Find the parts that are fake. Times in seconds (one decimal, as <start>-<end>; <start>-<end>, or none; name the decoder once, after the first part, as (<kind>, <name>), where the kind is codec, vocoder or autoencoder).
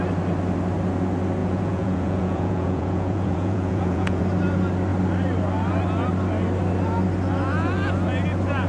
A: 1.4-4.2 (vocoder, Vocos)